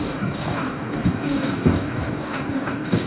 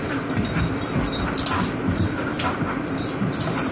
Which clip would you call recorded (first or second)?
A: second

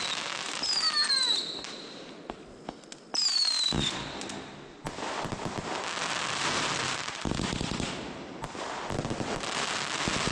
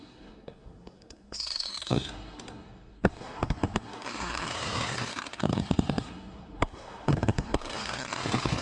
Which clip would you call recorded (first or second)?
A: first